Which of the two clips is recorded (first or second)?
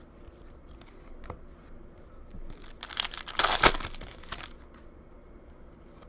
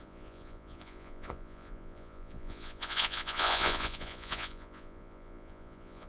first